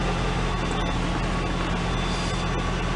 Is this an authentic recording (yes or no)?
yes